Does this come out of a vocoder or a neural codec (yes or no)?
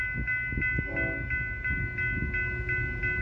no